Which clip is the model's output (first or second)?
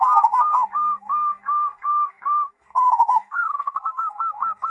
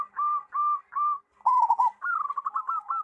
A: first